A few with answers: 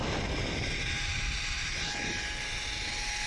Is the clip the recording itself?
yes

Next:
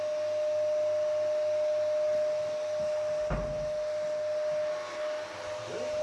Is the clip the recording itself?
yes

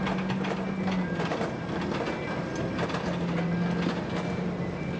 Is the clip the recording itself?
yes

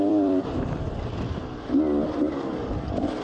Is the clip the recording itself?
no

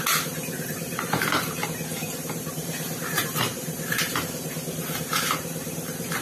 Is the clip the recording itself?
no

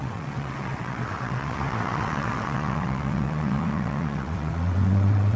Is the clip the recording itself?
no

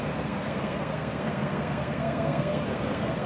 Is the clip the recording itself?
no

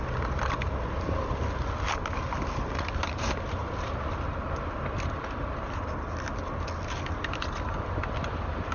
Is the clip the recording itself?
yes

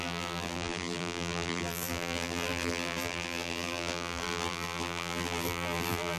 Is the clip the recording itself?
no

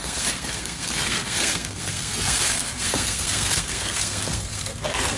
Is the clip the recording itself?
no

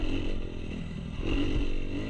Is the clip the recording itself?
yes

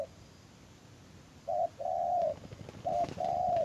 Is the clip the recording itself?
yes